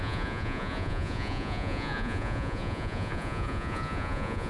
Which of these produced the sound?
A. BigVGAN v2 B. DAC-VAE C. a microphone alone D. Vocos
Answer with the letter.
D